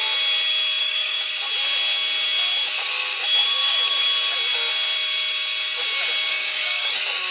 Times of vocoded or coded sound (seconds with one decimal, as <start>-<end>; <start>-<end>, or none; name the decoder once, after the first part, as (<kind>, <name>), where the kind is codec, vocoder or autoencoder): 0.8-1.3 (codec, DAC); 3.4-4.0; 6.3-7.3